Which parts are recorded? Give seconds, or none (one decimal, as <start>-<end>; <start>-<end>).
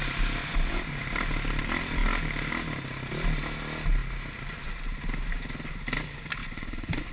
0.0-0.4; 1.0-6.4